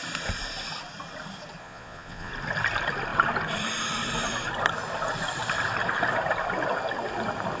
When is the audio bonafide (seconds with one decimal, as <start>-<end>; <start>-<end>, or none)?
0.0-1.6; 2.3-7.6